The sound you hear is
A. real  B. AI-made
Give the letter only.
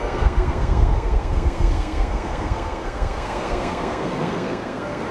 B